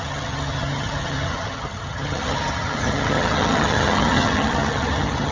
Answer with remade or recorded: remade